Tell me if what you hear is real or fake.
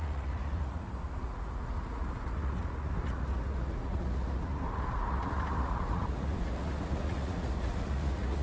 fake